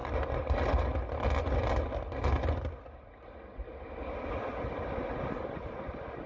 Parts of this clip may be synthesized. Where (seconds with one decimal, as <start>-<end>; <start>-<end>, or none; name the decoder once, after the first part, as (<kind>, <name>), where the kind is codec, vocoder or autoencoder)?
0.0-0.8 (vocoder, BigVGAN v2)